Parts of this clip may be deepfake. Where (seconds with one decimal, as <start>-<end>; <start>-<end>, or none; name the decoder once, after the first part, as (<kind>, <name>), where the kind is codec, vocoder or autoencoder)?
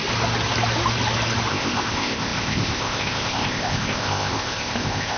1.5-5.2 (codec, ZipCodec)